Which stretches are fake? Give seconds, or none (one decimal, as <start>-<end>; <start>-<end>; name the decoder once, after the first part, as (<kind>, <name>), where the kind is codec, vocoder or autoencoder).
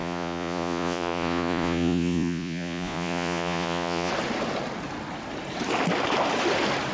0.0-4.1 (vocoder, Vocos)